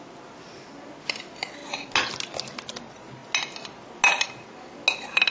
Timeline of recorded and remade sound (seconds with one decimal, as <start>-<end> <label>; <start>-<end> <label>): 0.0-5.3 recorded